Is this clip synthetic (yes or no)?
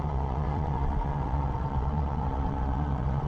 yes